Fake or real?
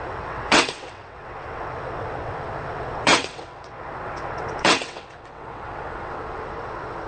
fake